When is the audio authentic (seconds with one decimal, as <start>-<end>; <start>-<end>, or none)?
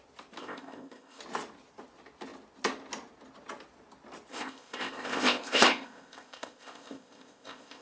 0.0-0.4; 1.2-4.3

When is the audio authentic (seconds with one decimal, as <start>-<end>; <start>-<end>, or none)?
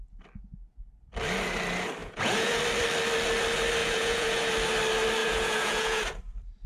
0.0-2.0; 2.6-3.8; 4.5-5.2; 6.2-6.7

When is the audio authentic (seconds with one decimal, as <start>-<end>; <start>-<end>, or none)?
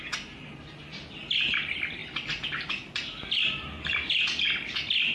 0.0-5.1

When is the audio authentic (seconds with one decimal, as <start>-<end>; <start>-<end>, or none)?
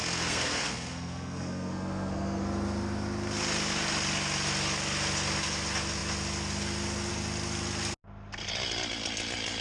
2.4-9.6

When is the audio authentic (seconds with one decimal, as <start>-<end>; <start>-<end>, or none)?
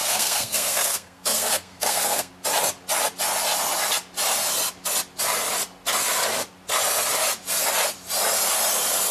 2.3-9.1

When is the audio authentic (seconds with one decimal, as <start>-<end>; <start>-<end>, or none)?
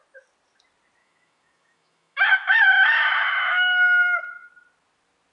0.0-1.0; 4.2-5.3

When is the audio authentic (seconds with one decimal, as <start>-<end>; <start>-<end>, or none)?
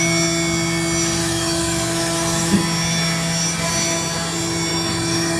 0.0-1.2; 2.6-4.7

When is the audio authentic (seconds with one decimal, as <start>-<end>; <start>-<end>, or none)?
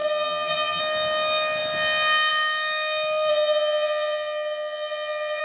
0.8-3.3